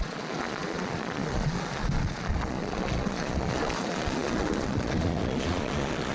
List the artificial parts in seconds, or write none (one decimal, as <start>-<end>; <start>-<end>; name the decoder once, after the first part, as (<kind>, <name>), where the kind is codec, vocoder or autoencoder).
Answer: 0.0-6.1 (vocoder, Vocos)

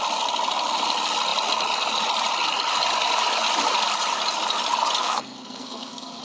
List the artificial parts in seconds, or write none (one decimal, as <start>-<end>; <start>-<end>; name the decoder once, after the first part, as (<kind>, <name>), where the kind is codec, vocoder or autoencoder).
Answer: 5.0-6.2 (codec, SNAC)